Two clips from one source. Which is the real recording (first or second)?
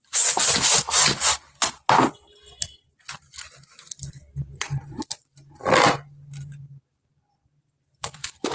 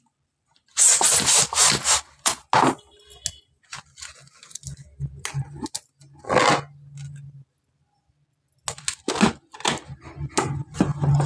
second